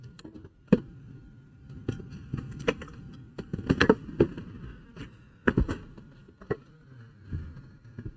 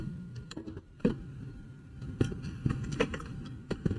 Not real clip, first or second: second